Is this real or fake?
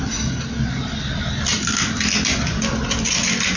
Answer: real